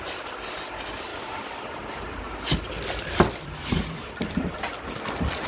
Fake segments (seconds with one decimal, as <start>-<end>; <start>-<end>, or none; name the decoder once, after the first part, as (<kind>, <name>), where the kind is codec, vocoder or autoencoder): 1.1-4.4 (vocoder, BigVGAN v2)